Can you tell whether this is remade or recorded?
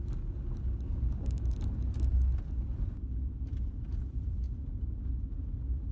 recorded